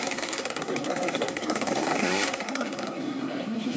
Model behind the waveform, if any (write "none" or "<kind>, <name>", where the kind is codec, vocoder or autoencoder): codec, SNAC